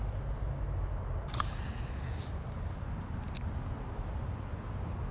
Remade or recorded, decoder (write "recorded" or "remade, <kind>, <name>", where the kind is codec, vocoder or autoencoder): recorded